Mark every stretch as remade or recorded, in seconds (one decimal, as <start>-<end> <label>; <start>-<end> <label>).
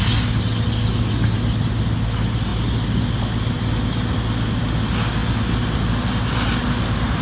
0.0-7.2 recorded